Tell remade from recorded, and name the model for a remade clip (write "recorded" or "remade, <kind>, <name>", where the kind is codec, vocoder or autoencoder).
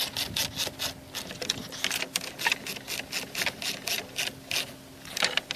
recorded